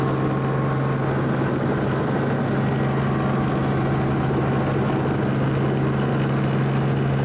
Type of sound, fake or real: real